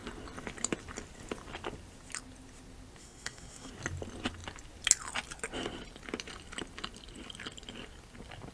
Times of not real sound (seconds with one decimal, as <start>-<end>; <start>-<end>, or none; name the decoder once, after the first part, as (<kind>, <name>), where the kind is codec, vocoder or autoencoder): 3.0-3.7 (codec, SNAC)